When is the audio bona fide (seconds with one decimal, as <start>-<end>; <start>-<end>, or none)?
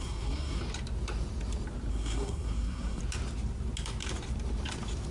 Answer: 0.6-1.9; 3.0-5.1